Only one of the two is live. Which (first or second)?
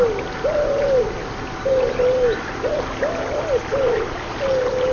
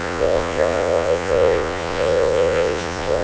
first